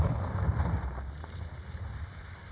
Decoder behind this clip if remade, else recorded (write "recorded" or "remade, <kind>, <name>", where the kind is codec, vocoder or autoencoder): recorded